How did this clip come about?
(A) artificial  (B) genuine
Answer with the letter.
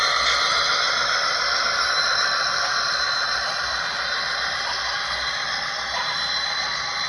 A